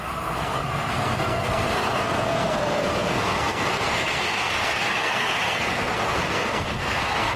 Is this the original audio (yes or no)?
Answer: no